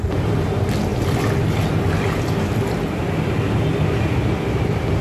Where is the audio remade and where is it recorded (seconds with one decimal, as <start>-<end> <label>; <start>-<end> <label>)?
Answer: 0.0-5.0 recorded